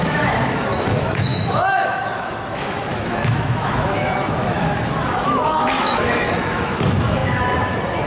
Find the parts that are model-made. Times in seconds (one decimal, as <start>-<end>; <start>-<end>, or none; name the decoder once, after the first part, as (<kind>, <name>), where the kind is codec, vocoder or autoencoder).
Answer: 0.0-8.1 (autoencoder, DAC-VAE)